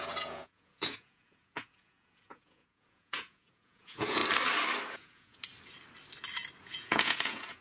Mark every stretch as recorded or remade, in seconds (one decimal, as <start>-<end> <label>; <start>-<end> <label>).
0.0-4.2 remade; 4.2-4.9 recorded; 4.9-5.5 remade; 5.5-6.6 recorded; 6.6-7.6 remade